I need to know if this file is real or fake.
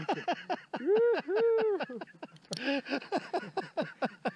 real